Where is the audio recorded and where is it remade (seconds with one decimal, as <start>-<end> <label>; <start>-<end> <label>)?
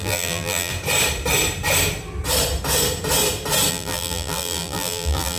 0.0-0.7 remade; 0.7-3.7 recorded; 3.7-5.4 remade